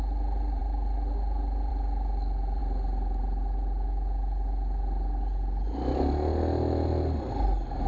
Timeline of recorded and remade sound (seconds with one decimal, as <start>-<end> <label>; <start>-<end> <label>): 0.0-7.9 recorded